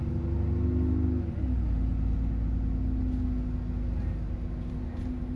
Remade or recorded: recorded